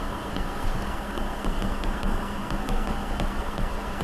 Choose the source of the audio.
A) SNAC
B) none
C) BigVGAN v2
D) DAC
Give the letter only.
A